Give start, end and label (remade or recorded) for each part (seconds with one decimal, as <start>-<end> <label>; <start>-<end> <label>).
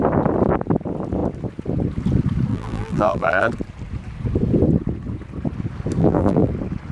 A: 0.0-2.5 recorded; 2.5-3.5 remade; 3.5-6.0 recorded; 6.0-6.5 remade; 6.5-6.9 recorded